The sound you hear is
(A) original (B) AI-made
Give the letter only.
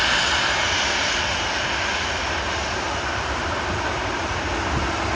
A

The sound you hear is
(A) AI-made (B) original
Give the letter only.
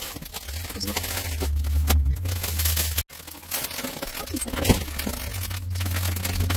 B